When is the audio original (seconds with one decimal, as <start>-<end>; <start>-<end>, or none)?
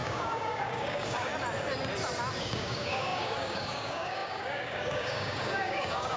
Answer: 1.3-2.4